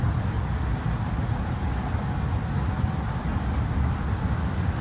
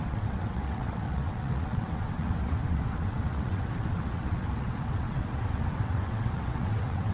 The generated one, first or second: second